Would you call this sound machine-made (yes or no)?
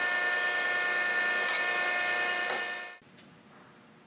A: no